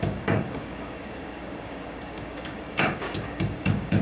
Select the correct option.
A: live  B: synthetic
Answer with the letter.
B